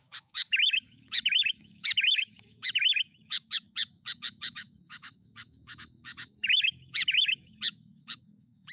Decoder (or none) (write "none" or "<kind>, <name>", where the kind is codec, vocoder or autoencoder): autoencoder, DAC-VAE